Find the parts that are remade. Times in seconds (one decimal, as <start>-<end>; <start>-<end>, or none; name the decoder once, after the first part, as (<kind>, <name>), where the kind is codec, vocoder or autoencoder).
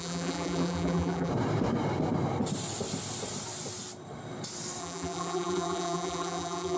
0.0-1.3 (vocoder, BigVGAN v2); 4.8-6.8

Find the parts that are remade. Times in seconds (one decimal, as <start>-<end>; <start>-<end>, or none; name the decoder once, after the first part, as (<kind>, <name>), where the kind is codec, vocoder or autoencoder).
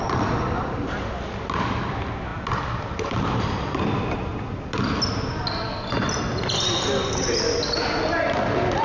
none